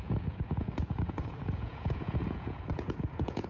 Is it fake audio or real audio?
fake